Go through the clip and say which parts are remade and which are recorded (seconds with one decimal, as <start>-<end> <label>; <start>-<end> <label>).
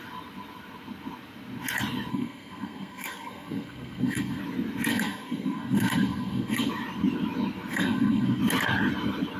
0.0-2.1 recorded; 2.1-4.4 remade; 4.4-4.9 recorded; 4.9-6.7 remade; 6.7-7.7 recorded; 7.7-8.4 remade; 8.4-9.4 recorded